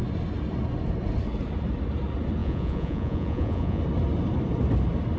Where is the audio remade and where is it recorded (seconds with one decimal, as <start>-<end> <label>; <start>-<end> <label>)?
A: 0.0-2.4 recorded; 2.4-3.8 remade; 3.8-5.2 recorded